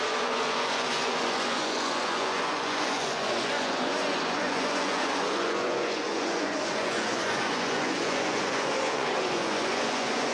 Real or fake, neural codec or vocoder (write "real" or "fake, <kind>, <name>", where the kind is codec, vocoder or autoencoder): fake, vocoder, Vocos